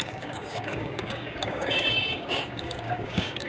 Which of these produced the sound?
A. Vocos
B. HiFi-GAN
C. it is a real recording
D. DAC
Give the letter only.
D